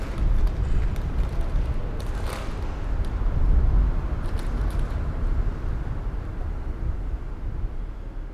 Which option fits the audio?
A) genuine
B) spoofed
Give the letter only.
A